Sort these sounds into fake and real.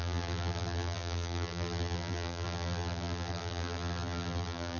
fake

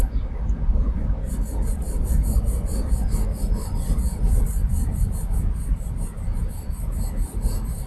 fake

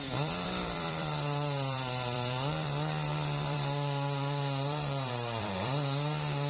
fake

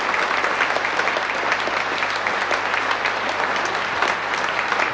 real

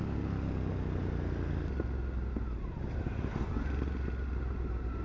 real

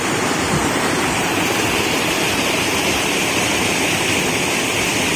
real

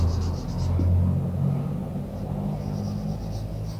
real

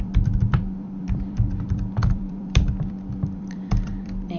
fake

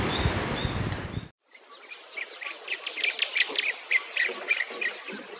real